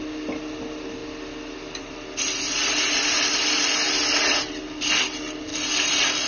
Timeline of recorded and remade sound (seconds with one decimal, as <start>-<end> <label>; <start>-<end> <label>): 0.0-6.3 recorded

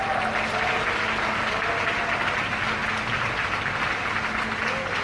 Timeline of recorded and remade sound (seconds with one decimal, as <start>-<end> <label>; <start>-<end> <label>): 0.0-5.0 recorded

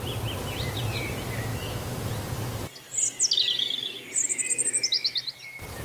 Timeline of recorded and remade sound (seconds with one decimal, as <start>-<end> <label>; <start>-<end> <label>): 0.0-1.5 recorded; 1.5-2.0 remade; 2.0-5.8 recorded